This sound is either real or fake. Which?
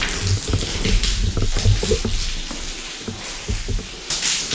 real